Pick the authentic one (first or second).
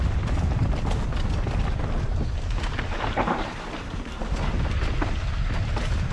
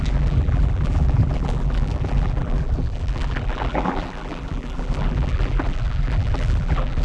first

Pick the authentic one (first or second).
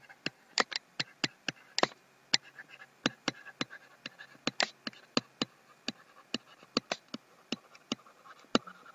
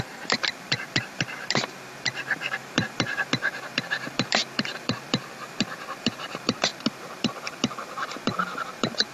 first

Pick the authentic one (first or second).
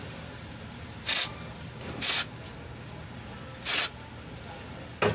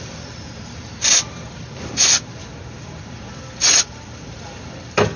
first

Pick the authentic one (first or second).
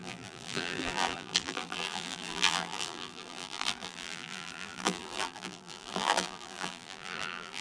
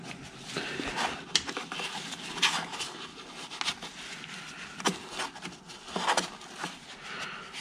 second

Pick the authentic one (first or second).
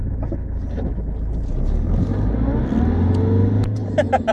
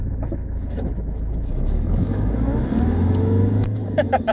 first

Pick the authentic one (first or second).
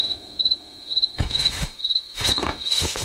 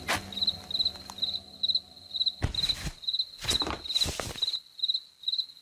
second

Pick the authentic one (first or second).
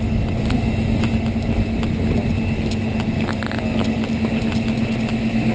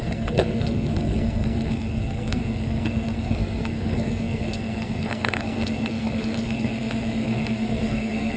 first